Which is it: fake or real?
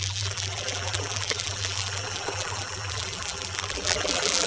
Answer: fake